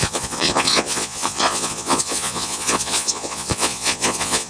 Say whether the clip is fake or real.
fake